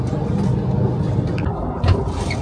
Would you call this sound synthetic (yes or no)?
no